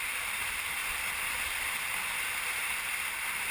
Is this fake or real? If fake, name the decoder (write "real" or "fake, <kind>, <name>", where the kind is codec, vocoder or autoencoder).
real